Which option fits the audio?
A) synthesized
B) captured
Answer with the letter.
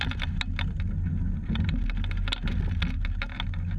B